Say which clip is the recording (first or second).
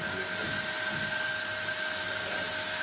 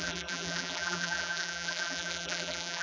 first